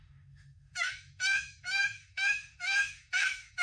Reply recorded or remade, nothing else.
remade